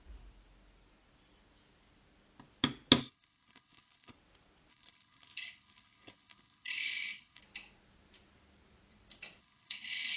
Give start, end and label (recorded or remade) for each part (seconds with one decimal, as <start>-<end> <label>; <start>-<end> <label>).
0.0-3.0 recorded; 3.0-4.1 remade; 4.1-4.7 recorded; 4.7-7.4 remade; 7.4-9.4 recorded; 9.4-10.2 remade